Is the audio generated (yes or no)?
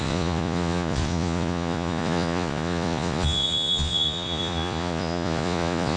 yes